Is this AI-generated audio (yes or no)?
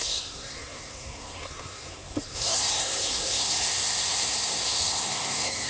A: yes